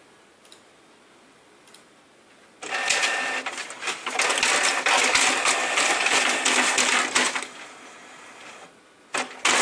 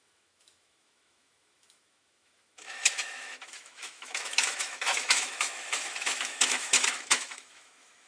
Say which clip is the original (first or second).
first